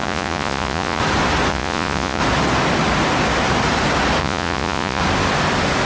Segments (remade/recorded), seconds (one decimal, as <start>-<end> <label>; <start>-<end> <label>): 0.0-1.0 remade; 1.0-1.5 recorded; 1.5-2.2 remade; 2.2-4.2 recorded; 4.2-5.0 remade; 5.0-5.9 recorded